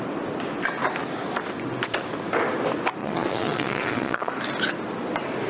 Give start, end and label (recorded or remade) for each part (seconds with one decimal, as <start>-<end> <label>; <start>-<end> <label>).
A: 0.0-3.0 recorded; 3.0-4.3 remade; 4.3-5.5 recorded